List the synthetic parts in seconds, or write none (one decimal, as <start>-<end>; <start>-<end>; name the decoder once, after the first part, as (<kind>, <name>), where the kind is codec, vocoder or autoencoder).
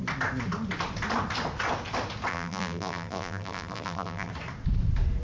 2.3-4.3 (vocoder, BigVGAN v2)